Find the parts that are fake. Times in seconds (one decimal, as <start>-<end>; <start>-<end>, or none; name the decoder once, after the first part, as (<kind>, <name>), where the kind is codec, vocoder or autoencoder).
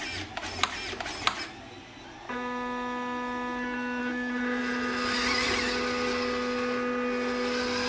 none